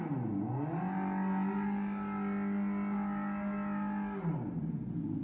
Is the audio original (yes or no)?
yes